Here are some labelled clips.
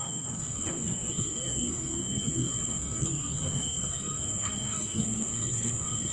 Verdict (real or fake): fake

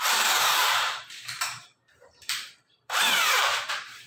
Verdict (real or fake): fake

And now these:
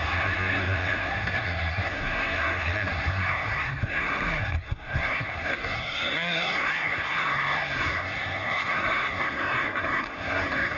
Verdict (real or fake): fake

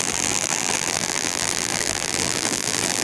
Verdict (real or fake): fake